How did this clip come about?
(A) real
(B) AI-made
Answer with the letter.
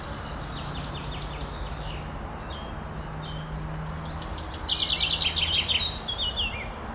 A